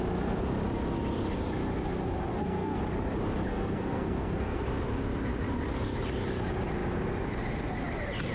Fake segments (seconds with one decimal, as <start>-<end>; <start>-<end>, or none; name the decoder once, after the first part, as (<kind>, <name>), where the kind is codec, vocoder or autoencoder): 2.3-2.8 (codec, SNAC); 3.5-4.6